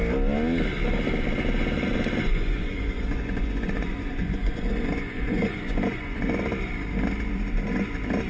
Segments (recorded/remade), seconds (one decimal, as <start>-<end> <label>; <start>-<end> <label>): 0.0-2.2 recorded; 2.2-6.3 remade; 6.3-8.3 recorded